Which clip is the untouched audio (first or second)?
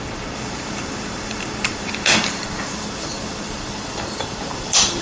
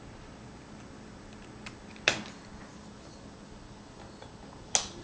second